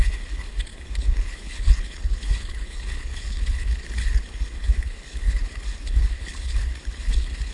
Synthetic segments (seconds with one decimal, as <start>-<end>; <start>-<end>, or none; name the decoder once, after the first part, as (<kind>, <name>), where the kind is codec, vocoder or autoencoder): 0.0-7.5 (codec, HILCodec)